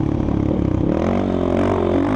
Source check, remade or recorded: recorded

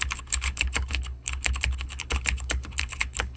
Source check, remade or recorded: remade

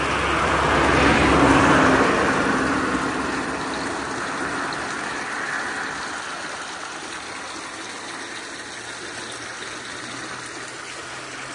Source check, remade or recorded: recorded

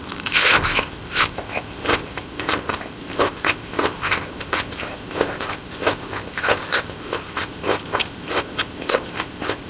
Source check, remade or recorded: remade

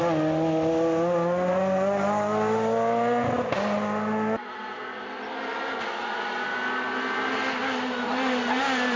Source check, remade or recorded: recorded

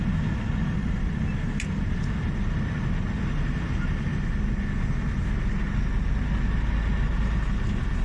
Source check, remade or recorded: recorded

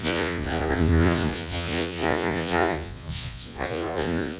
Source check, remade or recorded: remade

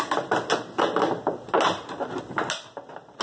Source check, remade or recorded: recorded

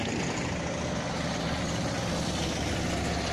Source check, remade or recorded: recorded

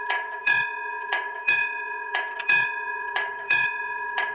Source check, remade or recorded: remade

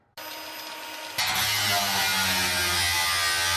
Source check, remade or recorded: recorded